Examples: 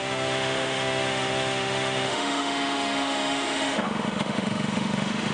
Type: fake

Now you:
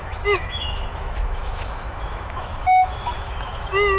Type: fake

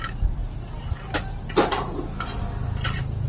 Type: real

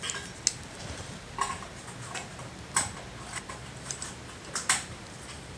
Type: real